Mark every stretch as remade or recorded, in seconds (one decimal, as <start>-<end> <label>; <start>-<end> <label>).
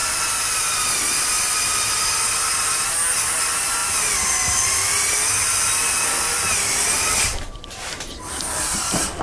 0.0-1.9 remade; 1.9-3.8 recorded; 3.8-9.2 remade